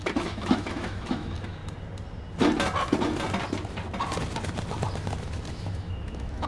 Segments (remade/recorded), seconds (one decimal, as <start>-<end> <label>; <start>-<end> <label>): 0.0-1.6 remade; 1.6-5.5 recorded; 5.5-6.5 remade